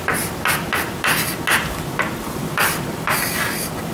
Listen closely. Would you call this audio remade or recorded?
recorded